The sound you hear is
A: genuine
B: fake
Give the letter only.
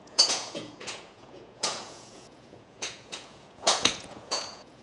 B